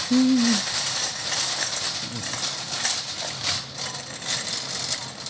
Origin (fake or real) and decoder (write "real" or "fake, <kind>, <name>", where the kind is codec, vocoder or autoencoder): real